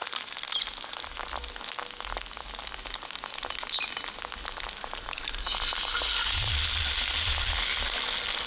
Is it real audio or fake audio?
real